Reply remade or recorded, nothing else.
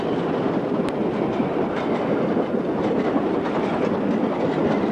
recorded